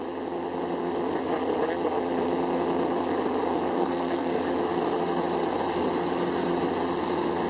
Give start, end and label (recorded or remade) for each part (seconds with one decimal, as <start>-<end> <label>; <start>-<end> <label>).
0.0-3.7 recorded; 3.7-4.4 remade; 4.4-7.5 recorded